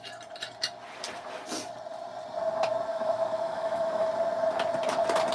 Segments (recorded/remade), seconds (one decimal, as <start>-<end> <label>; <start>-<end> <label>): 0.0-2.9 recorded; 2.9-4.1 remade; 4.1-5.3 recorded